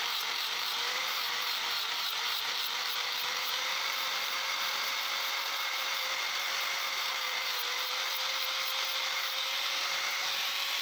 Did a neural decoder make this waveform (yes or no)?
yes